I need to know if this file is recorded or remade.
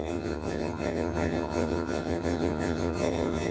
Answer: remade